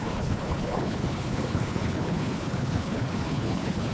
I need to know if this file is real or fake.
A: fake